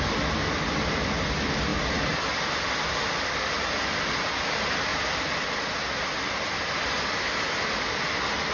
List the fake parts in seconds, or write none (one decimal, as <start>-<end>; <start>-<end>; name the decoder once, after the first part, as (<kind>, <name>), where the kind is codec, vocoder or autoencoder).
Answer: none